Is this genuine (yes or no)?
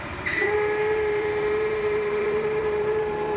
no